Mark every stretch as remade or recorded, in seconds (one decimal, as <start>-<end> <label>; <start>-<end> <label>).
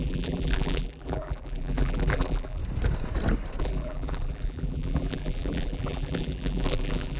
0.0-2.6 remade; 2.6-3.6 recorded; 3.6-7.2 remade